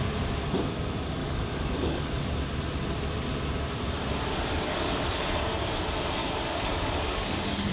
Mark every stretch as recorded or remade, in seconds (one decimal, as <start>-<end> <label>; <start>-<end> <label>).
0.0-1.2 recorded; 1.2-2.2 remade; 2.2-6.2 recorded; 6.2-7.7 remade